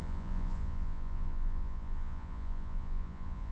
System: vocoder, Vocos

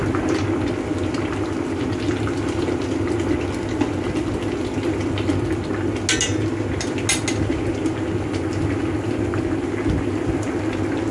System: none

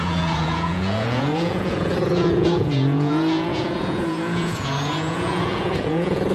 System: vocoder, Vocos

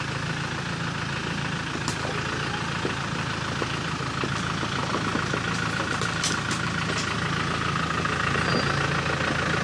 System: none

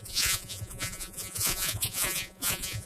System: vocoder, Vocos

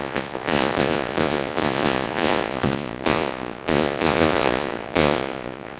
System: vocoder, Vocos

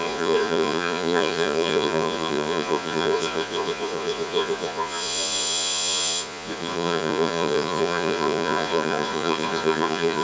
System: vocoder, Vocos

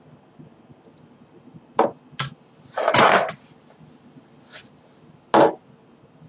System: none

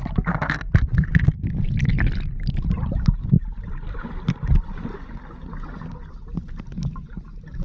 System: none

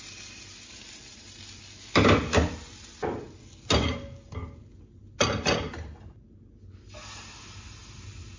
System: none